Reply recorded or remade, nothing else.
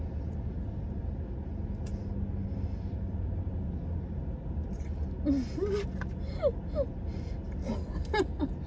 recorded